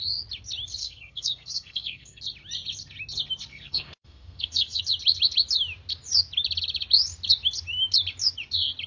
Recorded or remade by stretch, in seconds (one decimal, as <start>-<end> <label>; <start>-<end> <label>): 0.0-0.8 recorded; 0.8-2.2 remade; 2.2-3.5 recorded; 3.5-4.8 remade; 4.8-8.9 recorded